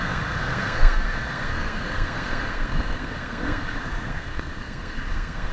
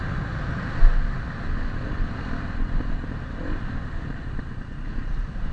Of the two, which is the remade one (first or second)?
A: first